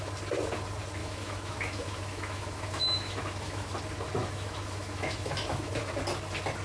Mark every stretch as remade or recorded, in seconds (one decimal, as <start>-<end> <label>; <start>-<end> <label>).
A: 0.0-1.0 recorded; 1.0-3.7 remade; 3.7-4.2 recorded; 4.2-5.9 remade; 5.9-6.6 recorded